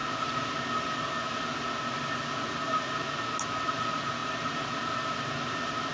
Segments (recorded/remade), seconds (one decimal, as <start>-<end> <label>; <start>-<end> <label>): 0.0-5.9 recorded